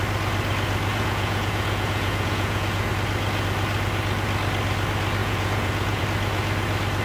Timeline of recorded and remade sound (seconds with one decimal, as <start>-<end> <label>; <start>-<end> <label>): 0.0-0.9 recorded; 0.9-2.9 remade; 2.9-5.2 recorded; 5.2-6.0 remade; 6.0-7.0 recorded